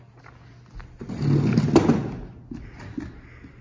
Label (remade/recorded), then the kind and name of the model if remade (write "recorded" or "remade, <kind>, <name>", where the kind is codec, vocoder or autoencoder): recorded